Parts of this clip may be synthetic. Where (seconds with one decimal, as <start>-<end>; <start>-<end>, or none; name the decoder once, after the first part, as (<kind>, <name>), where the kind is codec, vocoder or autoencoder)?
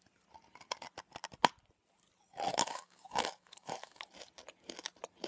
2.5-4.0 (codec, DAC)